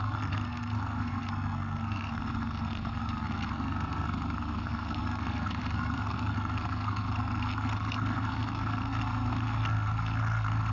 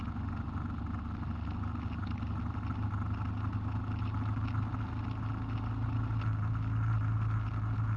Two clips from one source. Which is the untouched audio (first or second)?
second